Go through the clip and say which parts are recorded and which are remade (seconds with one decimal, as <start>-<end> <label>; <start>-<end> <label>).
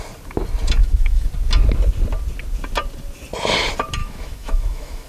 0.0-0.8 recorded; 0.8-1.3 remade; 1.3-4.0 recorded; 4.0-5.1 remade